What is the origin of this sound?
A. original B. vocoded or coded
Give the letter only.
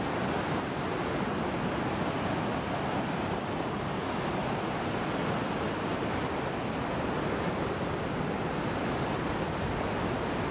A